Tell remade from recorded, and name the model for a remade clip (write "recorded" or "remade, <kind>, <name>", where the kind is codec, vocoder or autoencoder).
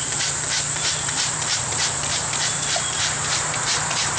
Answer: remade, vocoder, BigVGAN v2